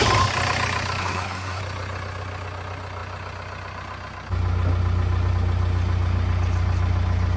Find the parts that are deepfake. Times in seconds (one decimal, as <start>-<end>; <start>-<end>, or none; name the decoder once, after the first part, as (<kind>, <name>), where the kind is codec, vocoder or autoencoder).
1.0-1.6 (codec, SNAC)